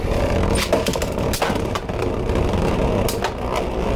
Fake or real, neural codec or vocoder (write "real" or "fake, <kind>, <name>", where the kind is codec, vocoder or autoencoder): real